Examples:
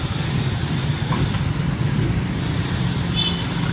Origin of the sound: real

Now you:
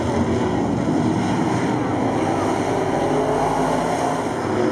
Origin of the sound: real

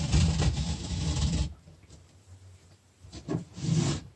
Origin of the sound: fake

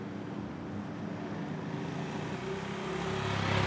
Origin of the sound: real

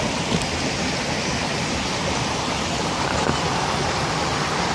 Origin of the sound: real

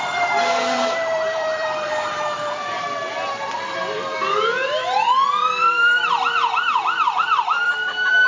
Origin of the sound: fake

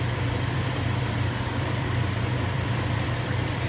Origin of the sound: fake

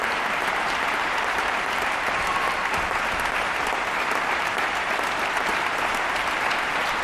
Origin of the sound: fake